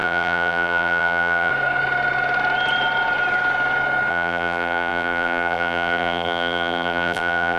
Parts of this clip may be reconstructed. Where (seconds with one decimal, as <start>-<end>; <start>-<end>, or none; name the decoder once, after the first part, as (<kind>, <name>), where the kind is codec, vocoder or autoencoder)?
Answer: 0.0-1.5 (vocoder, BigVGAN v2); 4.1-7.6